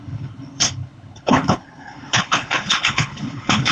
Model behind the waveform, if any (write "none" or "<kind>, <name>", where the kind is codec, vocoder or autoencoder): codec, HILCodec